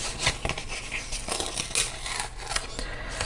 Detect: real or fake real